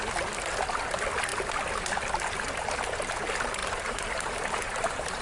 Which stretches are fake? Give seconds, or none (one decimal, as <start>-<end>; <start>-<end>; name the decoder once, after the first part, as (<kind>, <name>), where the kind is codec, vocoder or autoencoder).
3.6-5.2 (vocoder, BigVGAN v2)

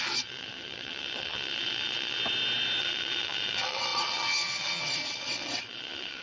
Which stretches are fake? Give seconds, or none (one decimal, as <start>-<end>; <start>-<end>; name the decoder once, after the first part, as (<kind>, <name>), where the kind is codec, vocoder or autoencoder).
0.0-2.2 (vocoder, WaveNeXt); 2.8-6.2